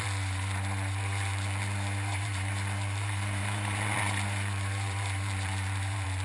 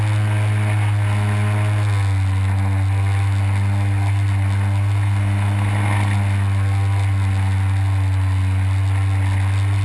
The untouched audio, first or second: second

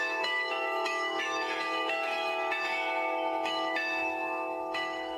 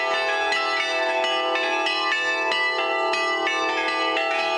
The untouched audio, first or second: second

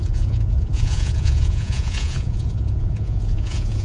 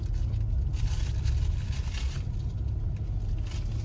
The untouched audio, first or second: second